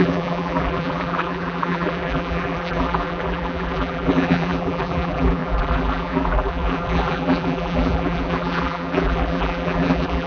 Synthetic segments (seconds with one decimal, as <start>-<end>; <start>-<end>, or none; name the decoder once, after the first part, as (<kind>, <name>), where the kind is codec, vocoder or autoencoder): 0.0-10.3 (vocoder, BigVGAN v2)